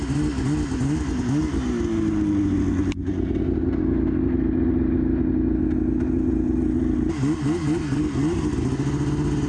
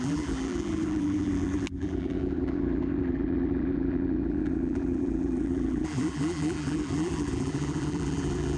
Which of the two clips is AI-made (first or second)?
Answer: second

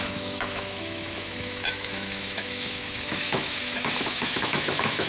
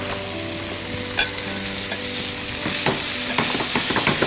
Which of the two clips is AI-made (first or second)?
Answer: first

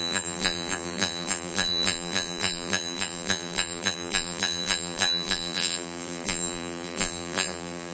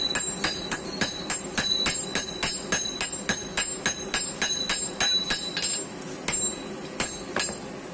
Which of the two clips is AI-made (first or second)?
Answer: first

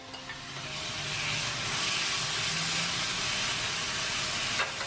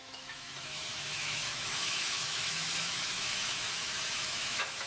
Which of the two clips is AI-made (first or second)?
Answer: second